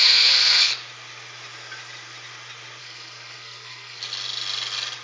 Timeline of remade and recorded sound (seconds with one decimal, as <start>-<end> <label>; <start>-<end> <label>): 0.0-0.7 remade; 0.7-2.8 recorded; 2.8-4.0 remade; 4.0-5.0 recorded